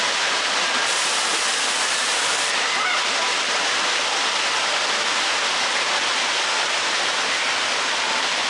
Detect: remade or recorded recorded